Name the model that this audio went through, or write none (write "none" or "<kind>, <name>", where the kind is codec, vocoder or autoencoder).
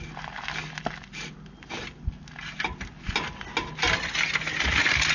none